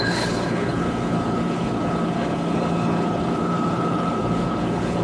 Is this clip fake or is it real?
fake